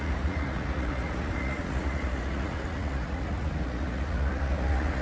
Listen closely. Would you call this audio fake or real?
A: fake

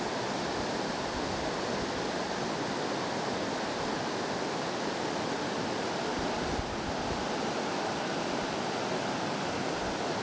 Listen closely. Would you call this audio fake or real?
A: real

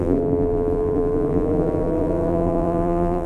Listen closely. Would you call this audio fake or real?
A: fake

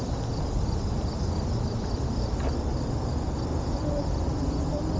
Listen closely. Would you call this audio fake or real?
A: real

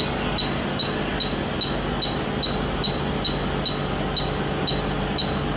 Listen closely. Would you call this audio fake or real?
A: real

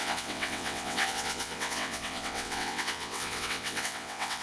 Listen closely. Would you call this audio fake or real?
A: fake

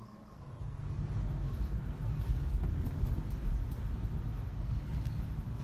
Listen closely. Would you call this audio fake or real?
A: fake